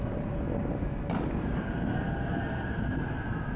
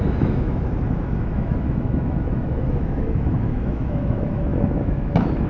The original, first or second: first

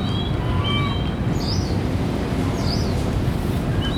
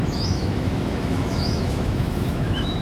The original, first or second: first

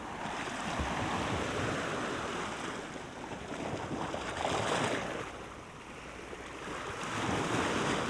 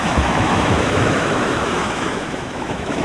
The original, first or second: first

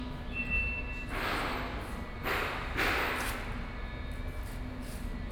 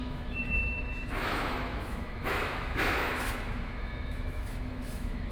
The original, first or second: first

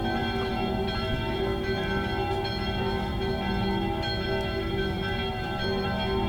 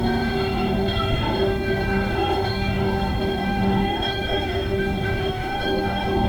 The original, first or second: first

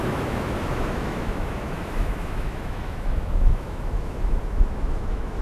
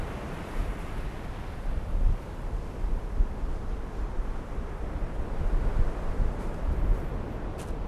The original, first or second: second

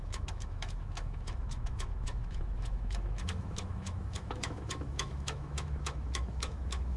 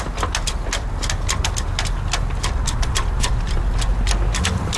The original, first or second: second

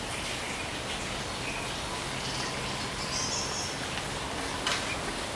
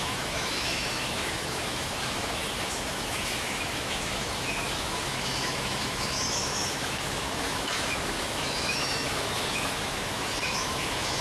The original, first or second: first